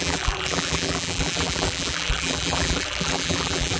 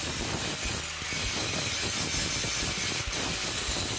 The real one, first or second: second